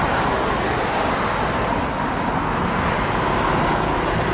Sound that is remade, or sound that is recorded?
recorded